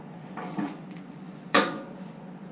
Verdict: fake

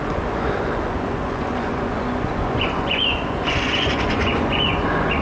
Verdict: fake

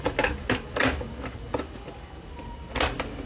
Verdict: real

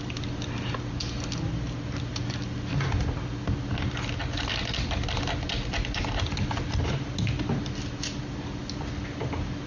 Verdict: real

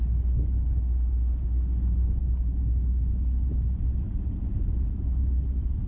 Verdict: real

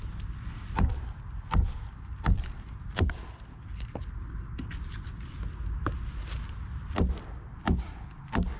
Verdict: real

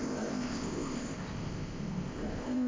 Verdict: fake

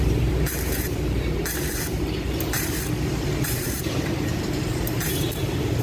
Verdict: fake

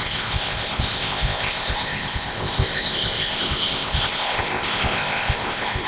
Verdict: fake